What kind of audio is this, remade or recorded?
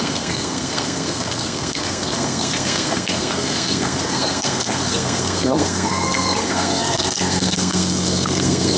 remade